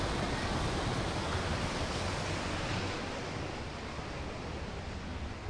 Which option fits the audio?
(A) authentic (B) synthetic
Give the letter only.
A